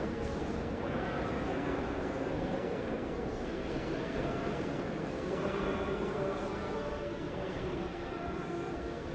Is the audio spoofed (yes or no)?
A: yes